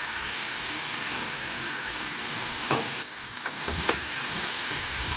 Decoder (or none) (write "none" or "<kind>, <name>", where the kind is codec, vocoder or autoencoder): codec, DAC